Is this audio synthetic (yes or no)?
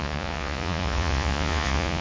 yes